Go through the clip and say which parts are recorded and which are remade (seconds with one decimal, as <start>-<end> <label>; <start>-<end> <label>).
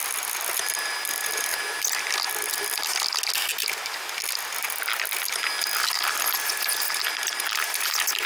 0.0-8.3 recorded